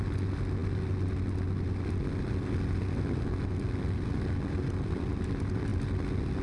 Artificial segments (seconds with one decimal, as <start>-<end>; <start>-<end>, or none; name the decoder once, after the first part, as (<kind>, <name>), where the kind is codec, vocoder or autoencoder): none